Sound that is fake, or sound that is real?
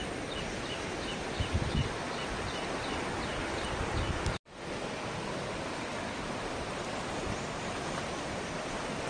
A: real